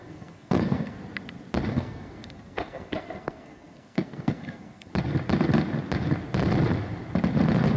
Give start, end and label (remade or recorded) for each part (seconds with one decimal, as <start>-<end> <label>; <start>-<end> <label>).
0.0-1.0 remade; 1.0-1.7 recorded; 1.7-4.9 remade; 4.9-7.8 recorded